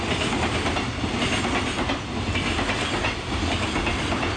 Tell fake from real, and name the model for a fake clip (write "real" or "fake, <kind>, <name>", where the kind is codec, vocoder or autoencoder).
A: real